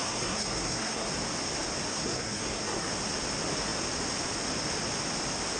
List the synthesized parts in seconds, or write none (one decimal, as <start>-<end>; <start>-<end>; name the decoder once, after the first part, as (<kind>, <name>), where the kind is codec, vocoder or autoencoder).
0.0-1.1 (codec, SNAC); 1.9-2.9